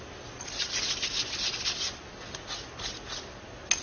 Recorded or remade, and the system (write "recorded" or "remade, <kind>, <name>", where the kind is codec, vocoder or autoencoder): recorded